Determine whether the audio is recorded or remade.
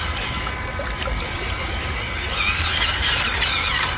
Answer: recorded